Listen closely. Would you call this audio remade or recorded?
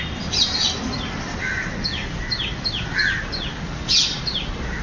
recorded